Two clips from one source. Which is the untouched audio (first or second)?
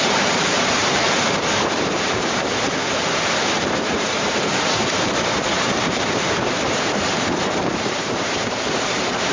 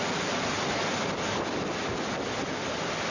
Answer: second